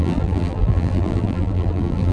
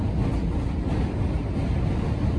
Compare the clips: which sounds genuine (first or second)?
second